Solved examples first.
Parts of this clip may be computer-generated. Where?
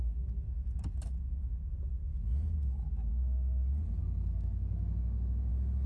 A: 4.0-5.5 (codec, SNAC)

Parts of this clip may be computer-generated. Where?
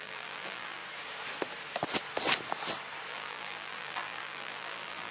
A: 0.0-0.8 (vocoder, BigVGAN v2); 3.1-5.1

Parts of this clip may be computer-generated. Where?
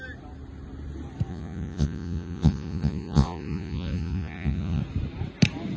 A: 1.3-4.8 (vocoder, Vocos)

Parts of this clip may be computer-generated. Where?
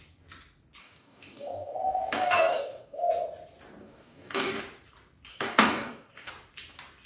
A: 0.8-3.1 (codec, DAC); 3.8-4.6; 5.3-6.3